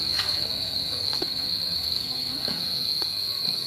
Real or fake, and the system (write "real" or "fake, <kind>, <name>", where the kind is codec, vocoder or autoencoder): fake, codec, SNAC